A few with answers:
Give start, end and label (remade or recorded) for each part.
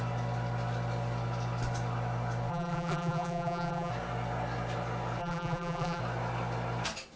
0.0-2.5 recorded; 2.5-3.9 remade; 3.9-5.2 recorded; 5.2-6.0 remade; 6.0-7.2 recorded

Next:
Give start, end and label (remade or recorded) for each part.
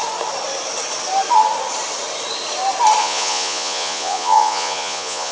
0.0-3.0 recorded; 3.0-5.3 remade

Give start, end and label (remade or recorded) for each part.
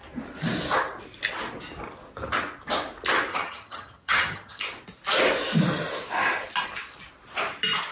0.0-3.3 recorded; 3.3-4.6 remade; 4.6-7.9 recorded